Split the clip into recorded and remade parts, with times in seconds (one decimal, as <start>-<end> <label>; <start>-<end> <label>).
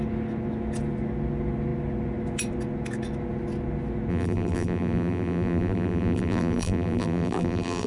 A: 0.0-4.1 recorded; 4.1-7.9 remade